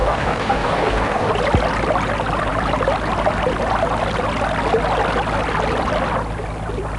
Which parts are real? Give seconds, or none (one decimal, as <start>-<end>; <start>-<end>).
1.3-7.0